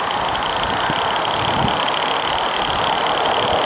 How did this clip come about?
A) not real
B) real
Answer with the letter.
B